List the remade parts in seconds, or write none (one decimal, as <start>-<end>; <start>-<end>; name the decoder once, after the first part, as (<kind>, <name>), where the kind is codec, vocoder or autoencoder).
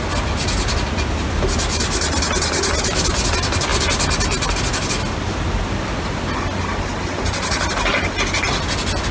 none